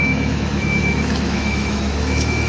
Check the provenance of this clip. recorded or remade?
remade